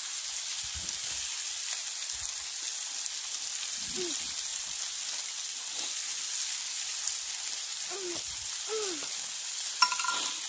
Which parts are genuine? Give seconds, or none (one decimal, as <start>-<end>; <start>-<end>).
0.0-10.5